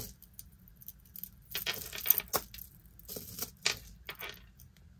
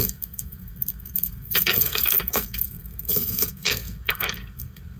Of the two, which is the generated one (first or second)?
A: second